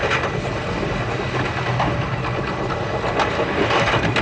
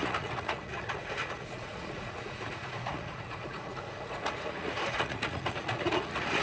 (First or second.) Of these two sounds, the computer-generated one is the second